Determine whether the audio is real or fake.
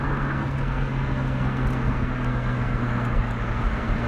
fake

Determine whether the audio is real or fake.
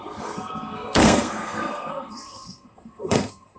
fake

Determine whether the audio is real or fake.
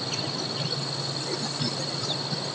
real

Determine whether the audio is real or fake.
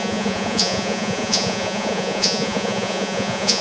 fake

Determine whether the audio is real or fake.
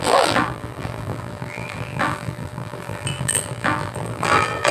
fake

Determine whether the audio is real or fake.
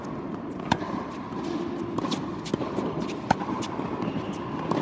real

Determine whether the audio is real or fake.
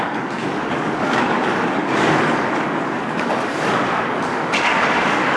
fake